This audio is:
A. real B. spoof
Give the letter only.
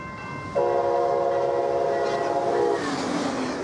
A